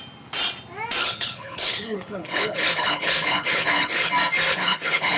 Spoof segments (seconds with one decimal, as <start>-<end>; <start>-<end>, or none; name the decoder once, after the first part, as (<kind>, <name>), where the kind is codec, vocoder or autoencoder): 1.0-4.1 (codec, HILCodec); 4.5-5.2